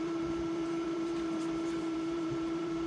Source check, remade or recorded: remade